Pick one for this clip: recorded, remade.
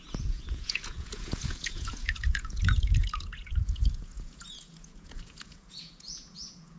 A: remade